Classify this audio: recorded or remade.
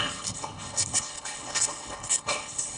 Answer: remade